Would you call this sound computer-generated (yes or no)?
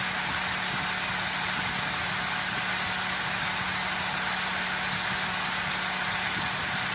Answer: no